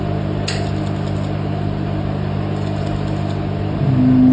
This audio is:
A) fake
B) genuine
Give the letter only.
B